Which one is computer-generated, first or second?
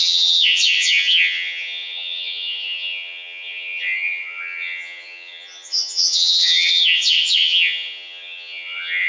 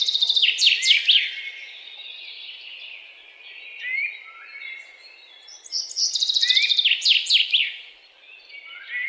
first